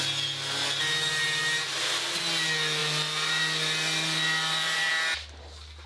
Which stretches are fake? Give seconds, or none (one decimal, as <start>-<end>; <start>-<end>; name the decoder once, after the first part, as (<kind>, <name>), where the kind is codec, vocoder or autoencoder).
2.8-4.9 (vocoder, BigVGAN v2)